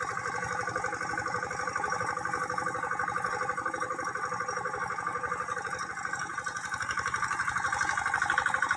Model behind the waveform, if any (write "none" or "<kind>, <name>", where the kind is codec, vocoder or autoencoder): none